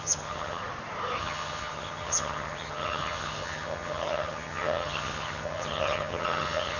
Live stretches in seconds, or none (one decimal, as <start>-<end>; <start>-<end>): 0.6-1.2